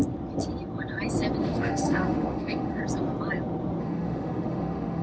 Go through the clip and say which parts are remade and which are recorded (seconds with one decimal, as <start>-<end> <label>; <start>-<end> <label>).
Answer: 0.0-1.4 recorded; 1.4-2.8 remade; 2.8-3.8 recorded; 3.8-5.0 remade